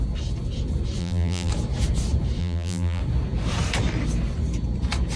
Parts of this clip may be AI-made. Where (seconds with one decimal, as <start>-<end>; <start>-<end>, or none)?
1.0-1.5; 2.4-3.0